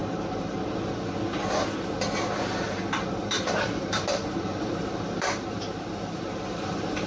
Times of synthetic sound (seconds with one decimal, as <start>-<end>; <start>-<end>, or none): 0.0-0.7; 3.0-7.1